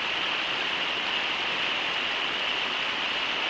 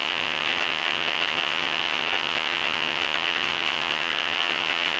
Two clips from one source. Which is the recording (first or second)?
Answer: first